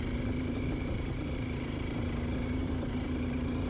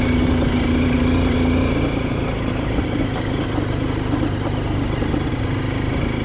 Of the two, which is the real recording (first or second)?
second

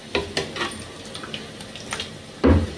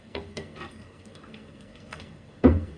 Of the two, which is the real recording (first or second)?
first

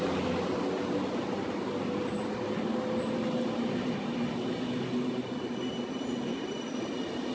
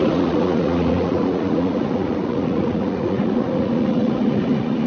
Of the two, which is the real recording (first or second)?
first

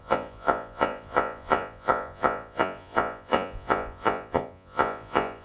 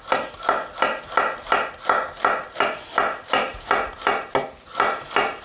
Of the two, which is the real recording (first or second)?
second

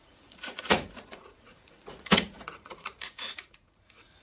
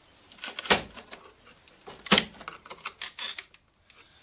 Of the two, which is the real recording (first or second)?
second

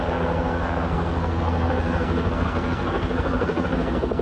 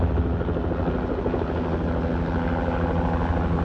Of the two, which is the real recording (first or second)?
second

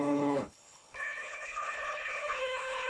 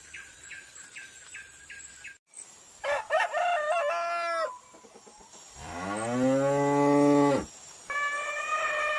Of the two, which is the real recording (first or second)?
second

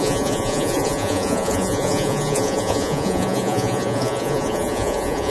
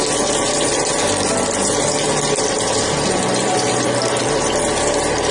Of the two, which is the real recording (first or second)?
second